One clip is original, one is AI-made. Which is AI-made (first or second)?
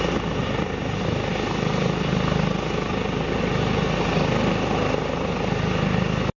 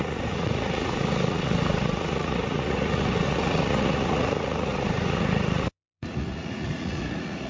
second